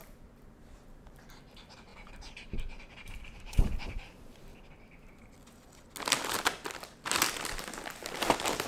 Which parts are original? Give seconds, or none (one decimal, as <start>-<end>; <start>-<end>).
4.5-8.2